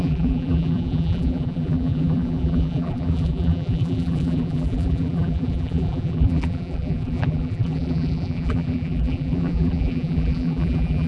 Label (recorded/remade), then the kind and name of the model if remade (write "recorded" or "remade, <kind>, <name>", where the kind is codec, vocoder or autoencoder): remade, vocoder, BigVGAN v2